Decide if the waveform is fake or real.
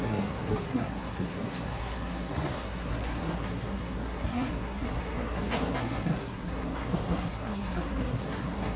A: fake